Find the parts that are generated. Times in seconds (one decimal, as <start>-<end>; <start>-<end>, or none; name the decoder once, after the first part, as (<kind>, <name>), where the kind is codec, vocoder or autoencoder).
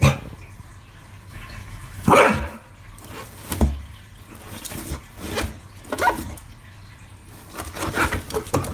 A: 1.3-2.1 (autoencoder, DAC-VAE)